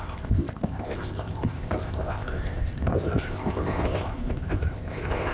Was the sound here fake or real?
fake